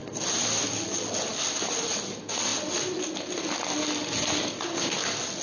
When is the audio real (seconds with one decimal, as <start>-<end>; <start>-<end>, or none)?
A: 0.0-5.4